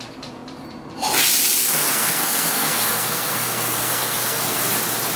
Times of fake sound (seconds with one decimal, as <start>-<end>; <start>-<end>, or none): 1.6-4.7